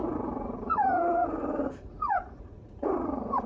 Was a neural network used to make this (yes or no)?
yes